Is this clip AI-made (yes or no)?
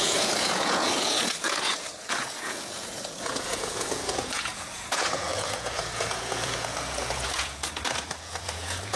yes